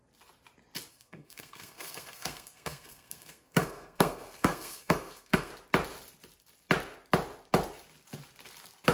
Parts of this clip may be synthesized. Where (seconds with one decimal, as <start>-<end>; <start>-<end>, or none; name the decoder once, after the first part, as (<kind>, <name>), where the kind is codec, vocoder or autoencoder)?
0.9-5.5 (codec, SNAC)